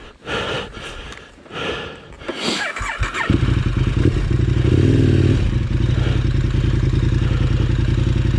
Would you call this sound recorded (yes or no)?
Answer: yes